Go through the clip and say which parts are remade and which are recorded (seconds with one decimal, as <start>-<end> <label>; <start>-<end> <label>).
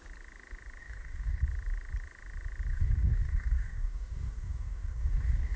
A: 0.0-0.8 recorded; 0.8-1.4 remade; 1.4-2.7 recorded; 2.7-5.6 remade